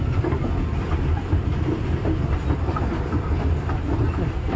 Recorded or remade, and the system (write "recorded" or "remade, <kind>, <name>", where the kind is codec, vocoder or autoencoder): recorded